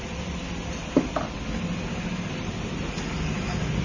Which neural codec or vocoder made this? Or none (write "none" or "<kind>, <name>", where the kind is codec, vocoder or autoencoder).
none